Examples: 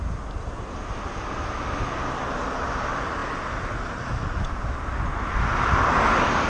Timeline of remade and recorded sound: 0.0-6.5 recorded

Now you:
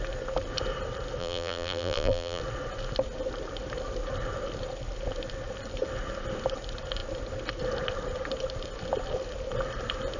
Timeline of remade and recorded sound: 0.0-1.2 recorded; 1.2-2.4 remade; 2.4-10.2 recorded